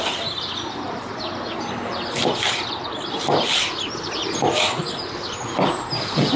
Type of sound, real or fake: real